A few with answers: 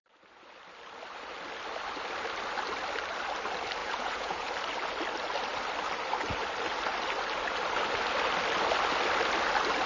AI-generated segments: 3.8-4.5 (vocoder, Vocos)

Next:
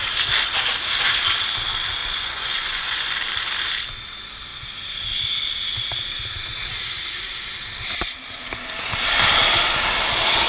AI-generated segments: 2.0-3.1 (vocoder, Vocos)

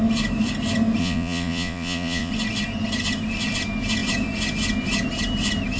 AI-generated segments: 1.0-2.3 (vocoder, Vocos)

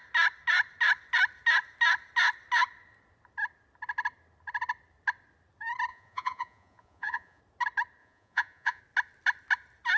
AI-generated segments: 5.9-7.4 (vocoder, Vocos); 8.0-8.8

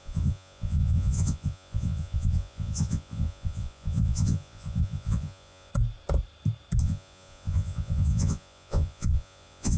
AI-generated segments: 0.0-5.7 (vocoder, Vocos); 6.8-9.8

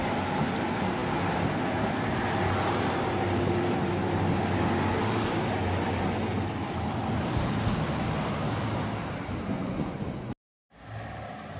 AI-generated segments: 9.5-10.3 (vocoder, Vocos)

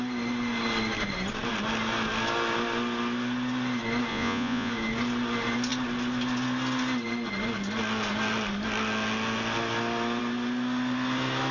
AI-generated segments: 4.1-4.7 (vocoder, Vocos)

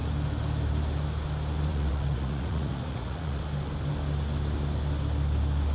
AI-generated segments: 1.7-3.4 (vocoder, Vocos)